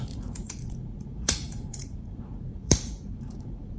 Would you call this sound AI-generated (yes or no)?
yes